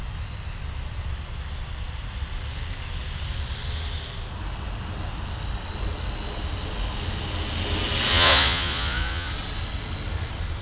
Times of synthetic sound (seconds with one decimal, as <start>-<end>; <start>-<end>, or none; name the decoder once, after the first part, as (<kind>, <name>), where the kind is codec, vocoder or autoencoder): 8.1-9.3 (vocoder, Vocos)